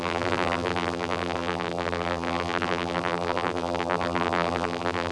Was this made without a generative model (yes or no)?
no